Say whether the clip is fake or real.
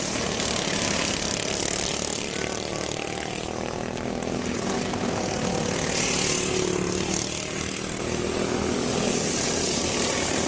real